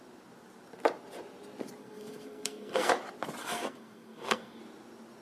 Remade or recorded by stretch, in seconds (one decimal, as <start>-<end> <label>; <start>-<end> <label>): 0.0-1.8 recorded; 1.8-2.9 remade; 2.9-3.4 recorded; 3.4-4.6 remade; 4.6-5.2 recorded

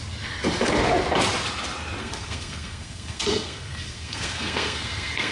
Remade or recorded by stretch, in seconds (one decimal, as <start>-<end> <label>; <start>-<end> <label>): 0.0-2.0 recorded; 2.0-5.3 remade

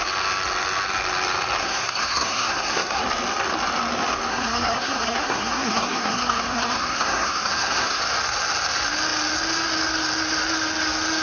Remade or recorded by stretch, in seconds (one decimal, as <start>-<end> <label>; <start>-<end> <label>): 0.0-1.6 recorded; 1.6-3.0 remade; 3.0-4.3 recorded; 4.3-8.0 remade; 8.0-11.2 recorded

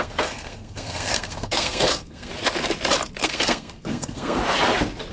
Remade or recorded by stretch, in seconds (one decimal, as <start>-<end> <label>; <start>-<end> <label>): 0.0-2.3 remade; 2.3-3.2 recorded; 3.2-4.4 remade; 4.4-5.1 recorded